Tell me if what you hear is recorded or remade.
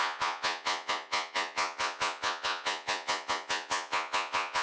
remade